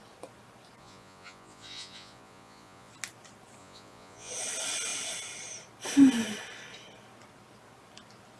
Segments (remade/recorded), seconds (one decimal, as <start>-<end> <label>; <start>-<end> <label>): 0.0-0.8 recorded; 0.8-2.9 remade; 2.9-3.6 recorded; 3.6-4.3 remade; 4.3-8.4 recorded